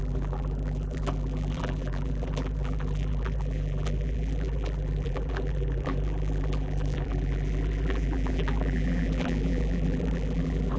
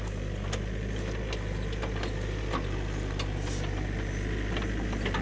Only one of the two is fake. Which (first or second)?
first